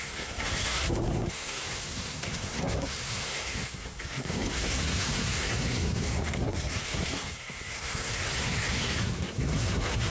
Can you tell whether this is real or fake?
fake